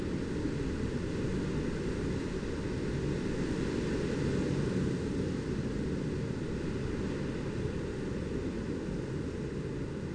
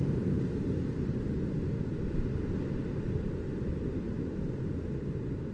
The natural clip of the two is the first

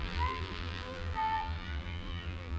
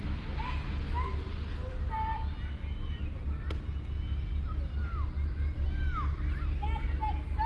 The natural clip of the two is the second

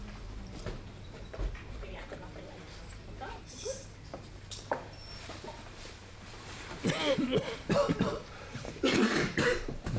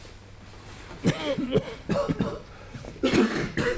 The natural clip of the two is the second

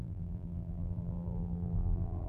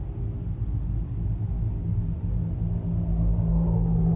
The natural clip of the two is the second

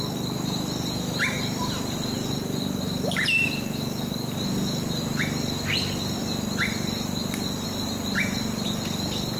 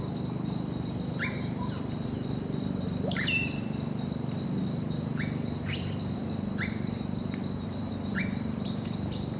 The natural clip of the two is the first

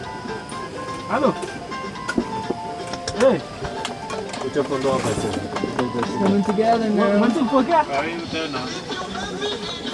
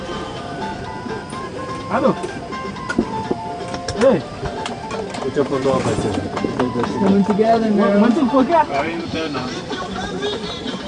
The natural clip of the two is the first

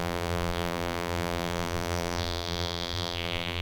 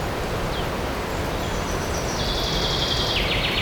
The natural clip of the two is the second